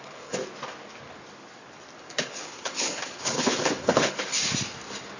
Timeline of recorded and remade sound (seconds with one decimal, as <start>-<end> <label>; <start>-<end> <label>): 0.0-0.4 remade; 0.4-2.0 recorded; 2.0-4.3 remade; 4.3-5.2 recorded